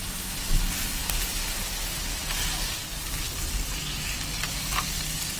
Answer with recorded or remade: recorded